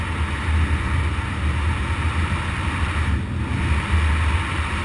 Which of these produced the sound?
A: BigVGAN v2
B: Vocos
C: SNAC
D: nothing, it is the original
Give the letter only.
D